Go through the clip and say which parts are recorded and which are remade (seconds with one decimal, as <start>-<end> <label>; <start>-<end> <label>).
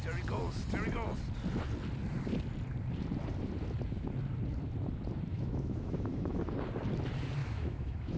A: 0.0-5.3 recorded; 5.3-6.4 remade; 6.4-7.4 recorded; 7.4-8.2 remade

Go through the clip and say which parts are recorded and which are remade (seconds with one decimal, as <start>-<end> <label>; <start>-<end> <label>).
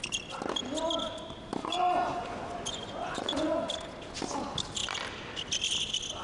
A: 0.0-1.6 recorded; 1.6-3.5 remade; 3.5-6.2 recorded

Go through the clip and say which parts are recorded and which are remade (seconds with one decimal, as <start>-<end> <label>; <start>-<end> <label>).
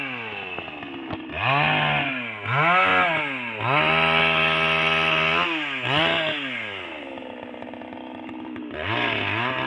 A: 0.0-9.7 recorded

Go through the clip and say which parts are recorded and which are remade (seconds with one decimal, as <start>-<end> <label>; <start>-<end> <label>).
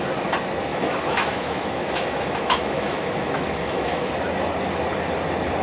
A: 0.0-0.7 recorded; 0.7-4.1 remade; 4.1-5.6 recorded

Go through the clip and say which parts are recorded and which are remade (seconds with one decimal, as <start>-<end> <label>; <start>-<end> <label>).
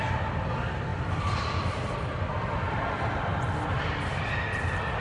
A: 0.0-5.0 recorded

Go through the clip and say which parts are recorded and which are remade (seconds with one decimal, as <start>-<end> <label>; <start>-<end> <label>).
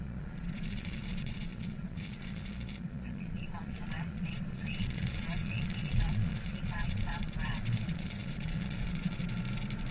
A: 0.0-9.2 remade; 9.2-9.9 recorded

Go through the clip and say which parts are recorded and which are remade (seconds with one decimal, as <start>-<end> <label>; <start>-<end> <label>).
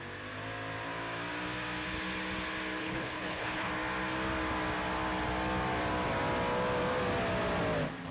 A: 0.0-2.8 recorded; 2.8-3.7 remade; 3.7-8.1 recorded